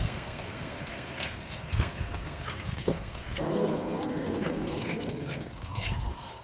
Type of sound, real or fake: fake